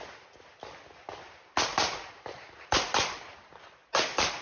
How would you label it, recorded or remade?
recorded